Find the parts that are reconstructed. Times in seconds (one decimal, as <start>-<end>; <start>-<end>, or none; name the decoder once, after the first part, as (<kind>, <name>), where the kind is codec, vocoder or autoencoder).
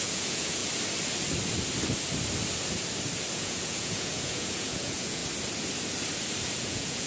0.0-0.6 (vocoder, Vocos); 3.3-5.2; 6.6-7.1